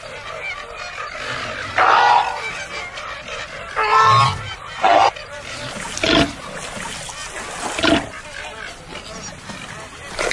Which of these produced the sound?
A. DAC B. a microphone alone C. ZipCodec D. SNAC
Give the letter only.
B